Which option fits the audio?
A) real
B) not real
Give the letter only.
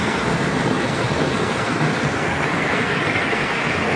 B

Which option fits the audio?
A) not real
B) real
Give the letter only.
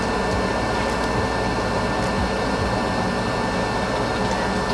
B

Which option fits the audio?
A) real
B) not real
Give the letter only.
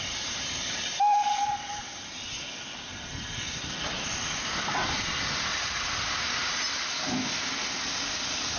A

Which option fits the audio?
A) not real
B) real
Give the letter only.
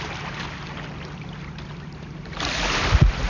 B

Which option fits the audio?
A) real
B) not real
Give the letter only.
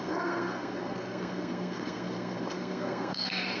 B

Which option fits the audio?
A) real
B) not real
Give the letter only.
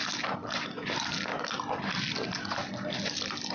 A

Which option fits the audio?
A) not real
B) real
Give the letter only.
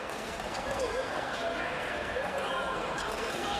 A